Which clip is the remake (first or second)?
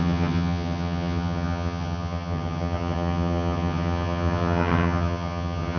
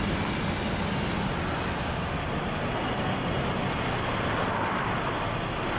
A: first